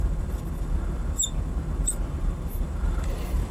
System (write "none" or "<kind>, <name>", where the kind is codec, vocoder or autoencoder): vocoder, BigVGAN v2